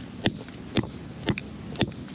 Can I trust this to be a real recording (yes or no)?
yes